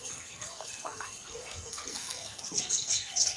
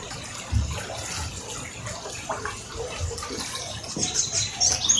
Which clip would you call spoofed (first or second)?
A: first